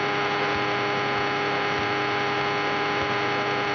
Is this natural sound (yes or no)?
yes